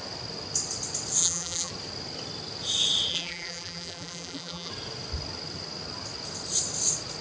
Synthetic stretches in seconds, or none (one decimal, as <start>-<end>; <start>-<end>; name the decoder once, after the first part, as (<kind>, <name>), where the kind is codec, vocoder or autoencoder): 1.2-1.7 (vocoder, BigVGAN v2); 3.1-4.7